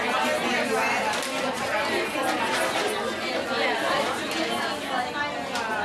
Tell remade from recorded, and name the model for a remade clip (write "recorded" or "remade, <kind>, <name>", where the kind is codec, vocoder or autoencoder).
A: recorded